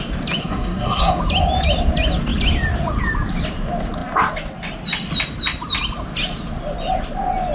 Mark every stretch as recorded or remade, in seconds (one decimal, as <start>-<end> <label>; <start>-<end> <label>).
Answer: 0.0-0.4 recorded; 0.4-1.2 remade; 1.2-7.5 recorded